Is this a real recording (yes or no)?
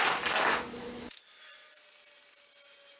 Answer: yes